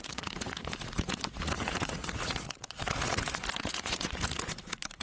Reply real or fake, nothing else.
fake